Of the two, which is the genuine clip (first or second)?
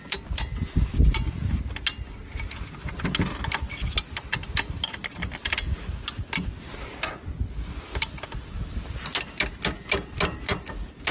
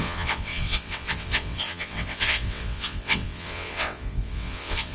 first